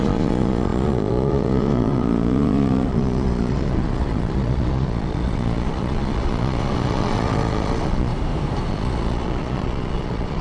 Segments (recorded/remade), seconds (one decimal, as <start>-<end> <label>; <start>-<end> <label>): 0.0-8.1 remade; 8.1-8.7 recorded; 8.7-10.4 remade